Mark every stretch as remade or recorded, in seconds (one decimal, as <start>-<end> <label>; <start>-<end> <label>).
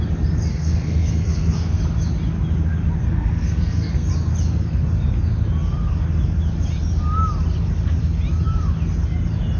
0.0-0.5 recorded; 0.5-1.8 remade; 1.8-3.0 recorded; 3.0-4.1 remade; 4.1-9.6 recorded